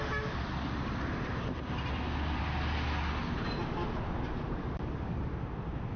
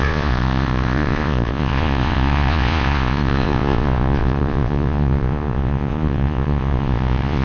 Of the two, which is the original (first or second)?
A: first